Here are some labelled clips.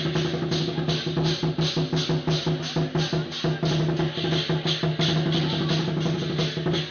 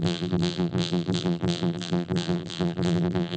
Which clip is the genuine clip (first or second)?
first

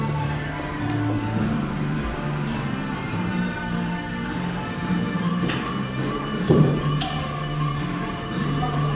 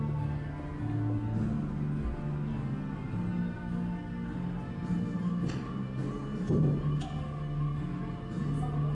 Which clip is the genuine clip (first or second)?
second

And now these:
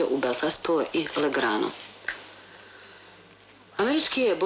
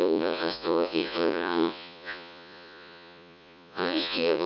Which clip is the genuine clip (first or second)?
first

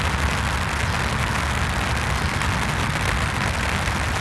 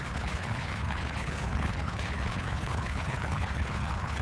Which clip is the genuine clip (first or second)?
first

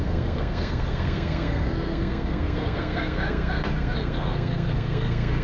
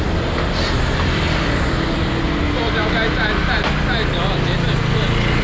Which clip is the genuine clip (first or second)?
second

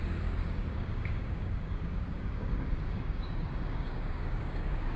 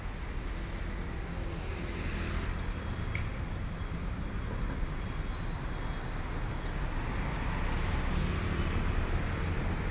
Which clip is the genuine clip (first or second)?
second